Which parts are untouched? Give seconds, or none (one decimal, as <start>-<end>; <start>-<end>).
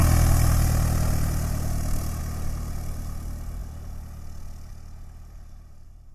0.0-6.1